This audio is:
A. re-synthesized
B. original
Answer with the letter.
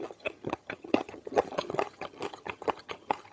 A